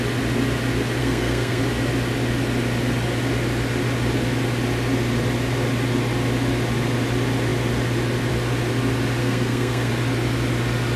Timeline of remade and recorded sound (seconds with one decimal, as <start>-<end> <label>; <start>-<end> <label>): 0.0-1.0 recorded; 1.0-1.6 remade; 1.6-9.2 recorded; 9.2-9.9 remade; 9.9-11.0 recorded